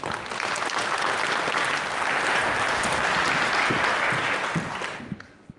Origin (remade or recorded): recorded